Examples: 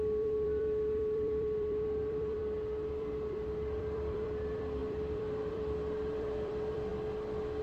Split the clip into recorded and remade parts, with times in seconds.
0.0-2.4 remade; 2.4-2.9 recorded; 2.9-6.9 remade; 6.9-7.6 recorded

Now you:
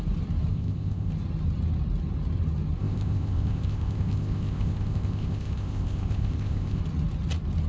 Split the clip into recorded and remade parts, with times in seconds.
0.0-0.5 recorded; 0.5-1.1 remade; 1.1-2.8 recorded; 2.8-6.8 remade; 6.8-7.7 recorded

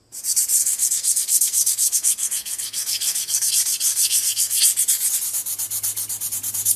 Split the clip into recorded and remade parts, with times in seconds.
0.0-0.6 recorded; 0.6-3.5 remade; 3.5-3.9 recorded; 3.9-4.6 remade; 4.6-6.8 recorded

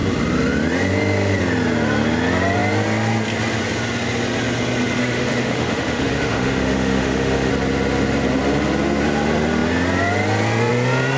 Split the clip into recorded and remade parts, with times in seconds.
0.0-5.0 recorded; 5.0-7.5 remade; 7.5-11.2 recorded

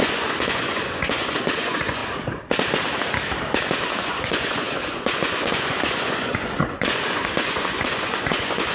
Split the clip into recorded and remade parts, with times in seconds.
0.0-2.0 remade; 2.0-4.0 recorded; 4.0-8.7 remade

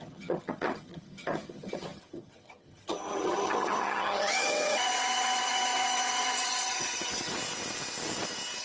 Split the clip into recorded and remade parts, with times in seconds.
0.0-7.4 remade; 7.4-8.6 recorded